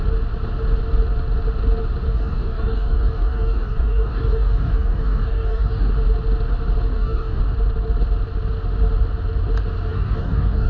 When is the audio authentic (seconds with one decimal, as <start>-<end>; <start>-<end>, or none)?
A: 0.0-2.1; 5.9-6.9; 7.4-9.9